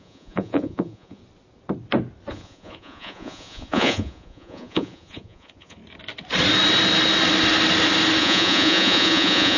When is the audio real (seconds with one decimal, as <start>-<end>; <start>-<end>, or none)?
1.2-2.3; 5.8-8.2